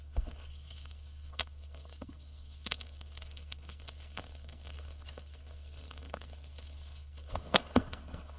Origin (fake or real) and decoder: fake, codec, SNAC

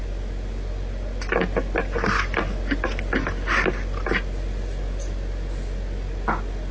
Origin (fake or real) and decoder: real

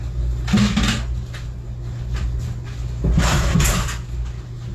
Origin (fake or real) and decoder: real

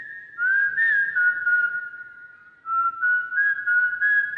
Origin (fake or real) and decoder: real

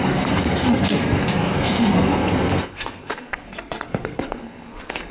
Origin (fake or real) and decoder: fake, codec, SNAC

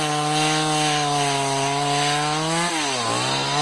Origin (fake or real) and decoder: real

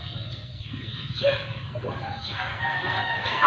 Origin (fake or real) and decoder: fake, codec, SNAC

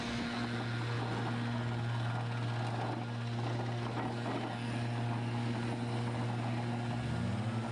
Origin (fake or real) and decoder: real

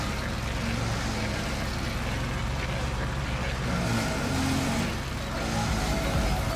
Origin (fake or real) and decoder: real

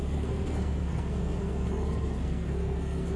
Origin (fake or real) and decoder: fake, codec, SNAC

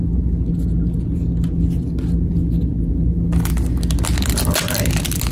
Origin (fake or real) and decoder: real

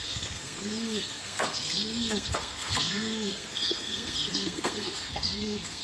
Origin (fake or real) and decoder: fake, codec, SNAC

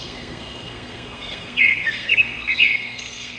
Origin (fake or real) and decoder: fake, codec, SNAC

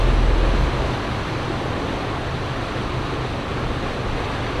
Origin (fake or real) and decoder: real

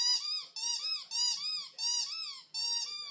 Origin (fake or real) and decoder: real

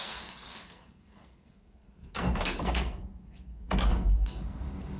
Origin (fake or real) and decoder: fake, codec, SNAC